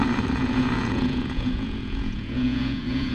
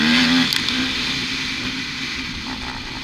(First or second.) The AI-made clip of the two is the first